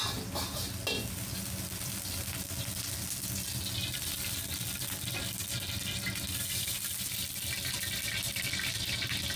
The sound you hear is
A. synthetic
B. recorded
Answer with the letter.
B